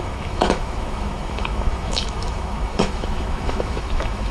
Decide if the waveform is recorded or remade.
remade